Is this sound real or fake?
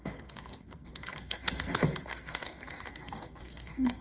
fake